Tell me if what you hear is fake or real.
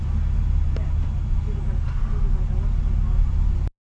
real